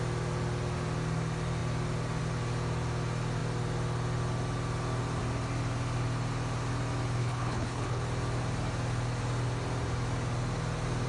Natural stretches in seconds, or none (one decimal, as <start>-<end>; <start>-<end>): 0.0-7.2; 8.0-11.1